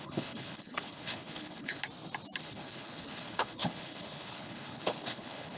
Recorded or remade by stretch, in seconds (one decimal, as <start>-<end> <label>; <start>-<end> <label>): 0.0-1.8 remade; 1.8-2.4 recorded; 2.4-5.6 remade